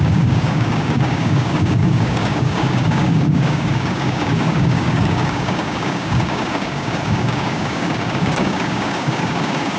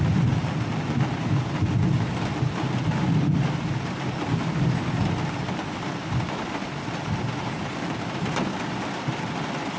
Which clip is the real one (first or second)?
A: second